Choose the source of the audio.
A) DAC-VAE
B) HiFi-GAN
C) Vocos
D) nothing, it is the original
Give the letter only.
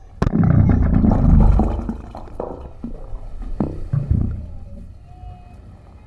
D